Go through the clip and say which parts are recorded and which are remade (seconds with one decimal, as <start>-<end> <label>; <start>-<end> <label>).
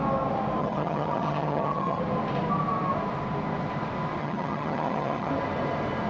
0.0-0.6 recorded; 0.6-2.0 remade; 2.0-4.2 recorded; 4.2-5.3 remade; 5.3-6.1 recorded